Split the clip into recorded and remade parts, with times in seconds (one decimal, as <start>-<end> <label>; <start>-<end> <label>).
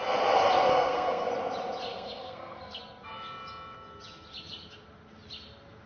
0.0-0.7 recorded; 0.7-1.3 remade; 1.3-1.9 recorded; 1.9-2.8 remade; 2.8-5.9 recorded